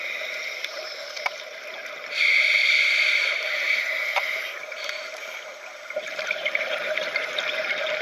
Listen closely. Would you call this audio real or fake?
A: fake